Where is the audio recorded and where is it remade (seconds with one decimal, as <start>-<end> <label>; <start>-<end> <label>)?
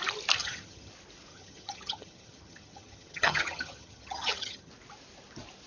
0.0-0.4 recorded; 0.4-0.9 remade; 0.9-1.3 recorded; 1.3-4.7 remade; 4.7-5.7 recorded